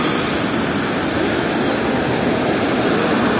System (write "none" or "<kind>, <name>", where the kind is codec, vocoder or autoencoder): none